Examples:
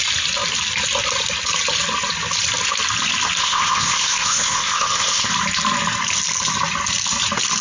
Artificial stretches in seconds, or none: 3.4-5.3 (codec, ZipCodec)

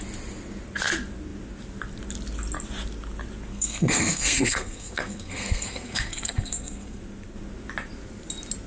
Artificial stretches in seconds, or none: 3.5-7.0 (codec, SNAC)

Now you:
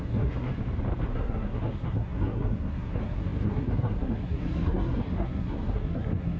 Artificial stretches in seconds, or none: 0.0-0.5 (codec, SNAC); 1.1-6.4